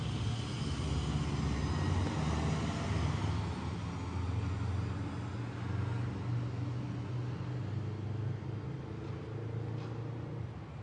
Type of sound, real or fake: real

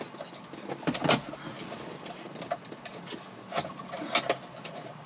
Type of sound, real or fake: real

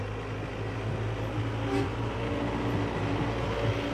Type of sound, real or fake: real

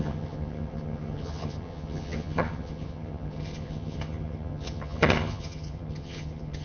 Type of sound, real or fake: fake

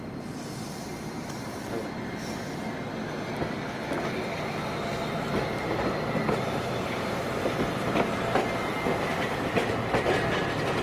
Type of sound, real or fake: real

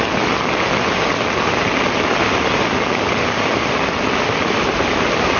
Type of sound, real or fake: real